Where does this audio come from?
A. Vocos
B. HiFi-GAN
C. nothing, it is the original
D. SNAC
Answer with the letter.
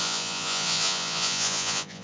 A